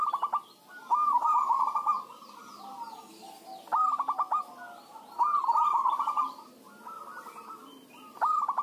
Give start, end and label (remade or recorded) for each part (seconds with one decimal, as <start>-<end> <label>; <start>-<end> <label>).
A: 0.0-8.6 recorded